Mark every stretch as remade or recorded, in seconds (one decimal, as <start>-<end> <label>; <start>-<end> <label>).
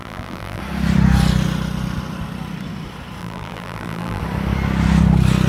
0.0-0.6 remade; 0.6-3.2 recorded; 3.2-4.2 remade; 4.2-5.5 recorded